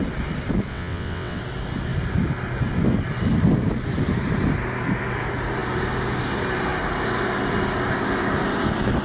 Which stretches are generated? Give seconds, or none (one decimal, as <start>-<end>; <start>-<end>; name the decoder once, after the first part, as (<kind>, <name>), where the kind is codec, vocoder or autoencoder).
0.7-1.4 (vocoder, WaveNeXt)